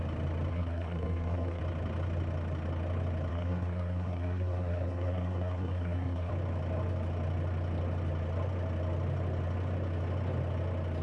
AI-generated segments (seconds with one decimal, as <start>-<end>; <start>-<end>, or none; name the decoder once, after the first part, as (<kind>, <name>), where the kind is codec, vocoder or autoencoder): 0.5-1.6 (codec, SNAC); 3.3-6.3